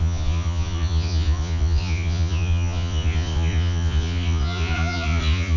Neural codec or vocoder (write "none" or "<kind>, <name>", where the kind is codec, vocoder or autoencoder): vocoder, Vocos